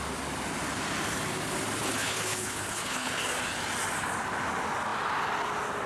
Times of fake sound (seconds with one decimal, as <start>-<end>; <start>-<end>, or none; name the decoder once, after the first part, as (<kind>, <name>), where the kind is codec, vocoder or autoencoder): 1.8-3.2 (codec, HILCodec)